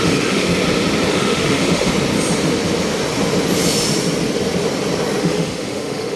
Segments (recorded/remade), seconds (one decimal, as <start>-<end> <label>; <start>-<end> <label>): 0.0-0.5 remade; 0.5-1.1 recorded; 1.1-1.9 remade; 1.9-5.2 recorded; 5.2-6.2 remade